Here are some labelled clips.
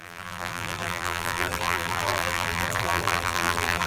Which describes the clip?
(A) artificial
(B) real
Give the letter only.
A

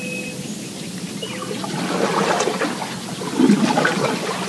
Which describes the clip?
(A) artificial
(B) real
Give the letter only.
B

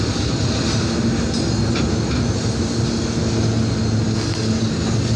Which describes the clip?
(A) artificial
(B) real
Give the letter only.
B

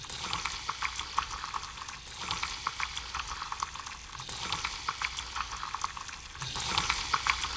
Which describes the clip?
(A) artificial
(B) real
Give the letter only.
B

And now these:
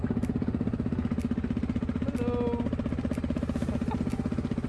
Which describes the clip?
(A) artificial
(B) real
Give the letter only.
B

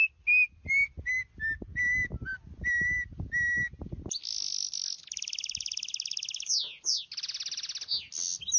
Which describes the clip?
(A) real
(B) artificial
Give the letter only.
A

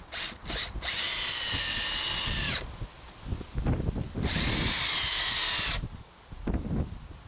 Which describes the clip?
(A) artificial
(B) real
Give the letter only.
B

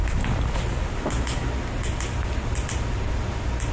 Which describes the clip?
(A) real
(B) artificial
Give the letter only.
A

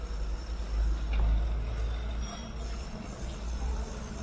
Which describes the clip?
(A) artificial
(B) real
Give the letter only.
B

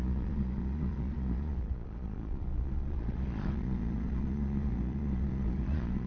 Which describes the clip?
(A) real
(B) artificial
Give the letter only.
B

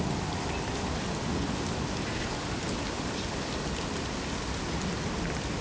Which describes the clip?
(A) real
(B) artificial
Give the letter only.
A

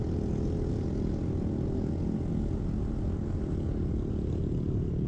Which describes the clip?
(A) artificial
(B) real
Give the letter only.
B